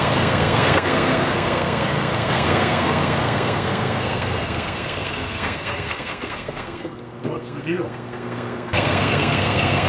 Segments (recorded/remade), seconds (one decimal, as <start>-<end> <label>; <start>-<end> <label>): 0.0-9.9 remade